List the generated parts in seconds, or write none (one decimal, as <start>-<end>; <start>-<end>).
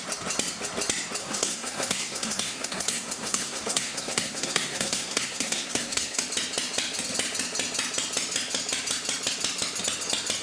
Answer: 1.2-6.2